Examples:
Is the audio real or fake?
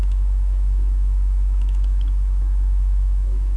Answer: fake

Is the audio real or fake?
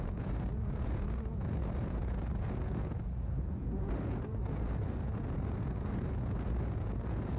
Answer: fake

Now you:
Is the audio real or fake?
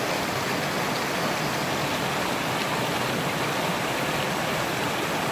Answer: real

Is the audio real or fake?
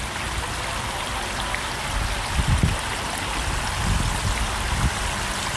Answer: real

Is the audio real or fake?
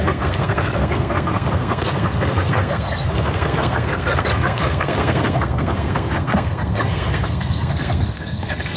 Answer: fake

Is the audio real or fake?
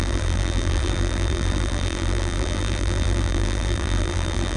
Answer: fake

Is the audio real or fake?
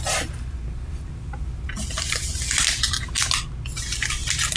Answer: real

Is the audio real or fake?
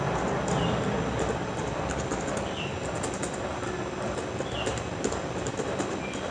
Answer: real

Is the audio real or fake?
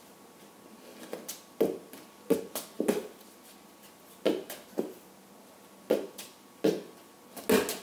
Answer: real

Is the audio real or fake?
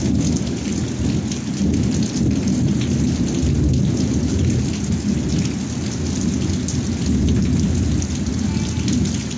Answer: real